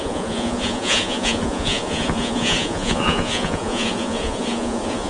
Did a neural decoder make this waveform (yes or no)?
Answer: yes